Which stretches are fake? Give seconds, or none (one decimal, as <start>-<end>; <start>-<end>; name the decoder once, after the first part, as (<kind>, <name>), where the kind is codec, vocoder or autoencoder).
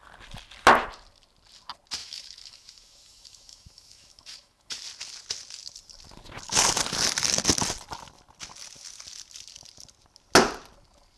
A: 2.0-4.8 (autoencoder, DAC-VAE)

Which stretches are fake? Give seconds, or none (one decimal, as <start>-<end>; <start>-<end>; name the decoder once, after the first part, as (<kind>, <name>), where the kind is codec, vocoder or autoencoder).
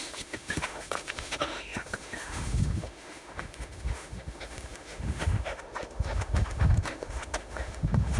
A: 0.0-8.2 (autoencoder, DAC-VAE)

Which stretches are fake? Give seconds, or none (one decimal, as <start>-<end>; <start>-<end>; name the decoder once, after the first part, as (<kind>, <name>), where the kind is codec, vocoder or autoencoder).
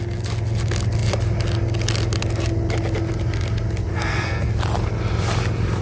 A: 3.9-4.5 (codec, SNAC)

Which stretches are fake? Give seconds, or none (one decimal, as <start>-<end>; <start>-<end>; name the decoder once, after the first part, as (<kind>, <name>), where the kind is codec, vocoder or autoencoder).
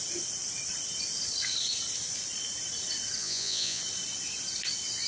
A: 3.2-3.8 (vocoder, Vocos)